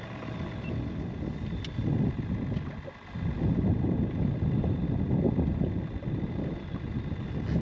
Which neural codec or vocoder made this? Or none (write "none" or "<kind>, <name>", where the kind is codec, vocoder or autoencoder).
none